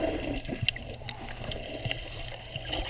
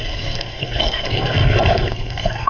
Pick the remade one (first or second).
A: second